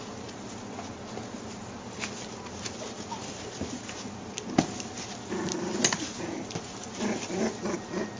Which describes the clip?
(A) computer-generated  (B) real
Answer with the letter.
B